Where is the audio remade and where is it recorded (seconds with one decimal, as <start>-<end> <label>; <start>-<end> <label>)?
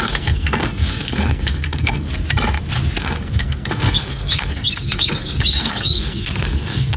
0.0-2.1 remade; 2.1-3.0 recorded; 3.0-7.0 remade